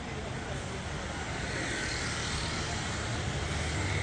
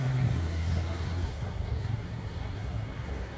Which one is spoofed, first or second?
second